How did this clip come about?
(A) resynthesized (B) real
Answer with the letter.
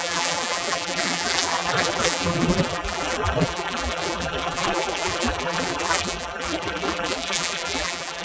A